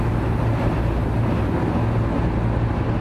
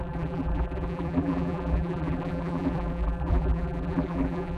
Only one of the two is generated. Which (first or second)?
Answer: second